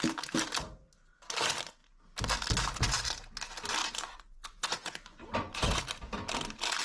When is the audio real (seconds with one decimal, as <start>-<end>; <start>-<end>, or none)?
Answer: 0.0-3.8; 5.8-6.8

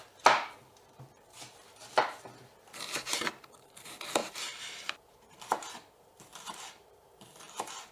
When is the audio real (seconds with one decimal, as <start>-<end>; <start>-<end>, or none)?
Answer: none

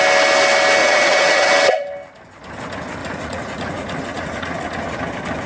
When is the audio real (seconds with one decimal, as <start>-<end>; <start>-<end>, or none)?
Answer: 0.0-0.8; 1.5-3.0; 5.0-5.5

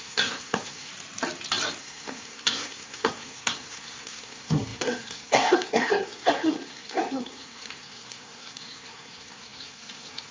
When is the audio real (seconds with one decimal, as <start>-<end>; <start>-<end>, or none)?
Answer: 0.9-1.8

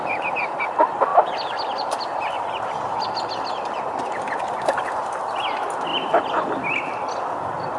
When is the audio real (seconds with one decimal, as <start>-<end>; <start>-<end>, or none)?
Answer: 0.0-7.8

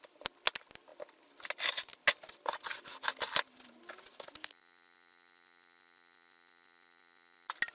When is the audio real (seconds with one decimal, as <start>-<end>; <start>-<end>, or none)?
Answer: 0.0-7.7